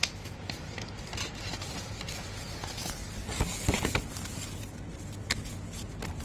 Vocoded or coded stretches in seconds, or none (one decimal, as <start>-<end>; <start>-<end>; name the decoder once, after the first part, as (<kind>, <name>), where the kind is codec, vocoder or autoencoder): 0.0-3.0 (vocoder, BigVGAN v2)